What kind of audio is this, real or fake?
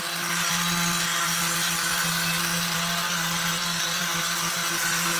real